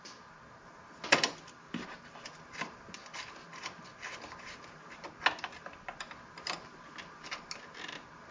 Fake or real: real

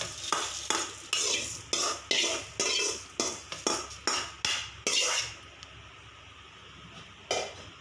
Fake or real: real